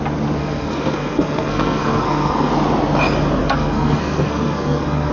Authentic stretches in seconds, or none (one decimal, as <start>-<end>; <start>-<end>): 0.0-0.4; 2.5-3.4